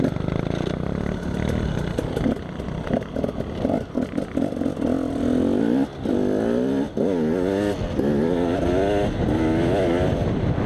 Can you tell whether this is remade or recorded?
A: recorded